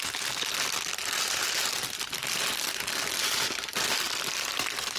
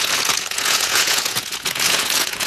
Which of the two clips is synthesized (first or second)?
second